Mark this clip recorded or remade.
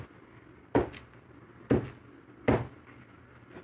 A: recorded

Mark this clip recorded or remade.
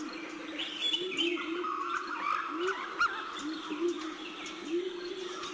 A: recorded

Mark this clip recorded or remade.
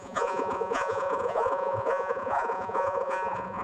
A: remade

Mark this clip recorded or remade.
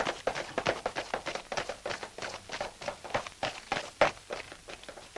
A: recorded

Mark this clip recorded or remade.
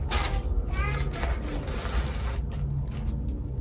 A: recorded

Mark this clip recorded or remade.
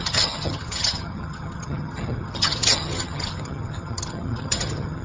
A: remade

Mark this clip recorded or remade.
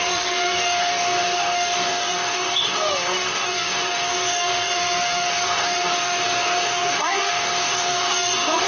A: remade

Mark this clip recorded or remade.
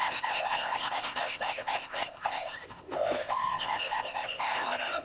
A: remade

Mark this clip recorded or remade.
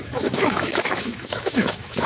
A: remade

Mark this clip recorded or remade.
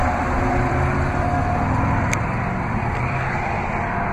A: remade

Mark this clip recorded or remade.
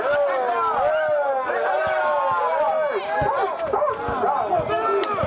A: recorded